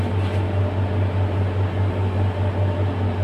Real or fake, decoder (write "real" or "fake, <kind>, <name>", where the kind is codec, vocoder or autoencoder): real